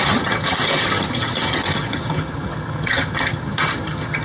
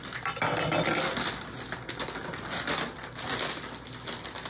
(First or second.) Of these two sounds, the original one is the second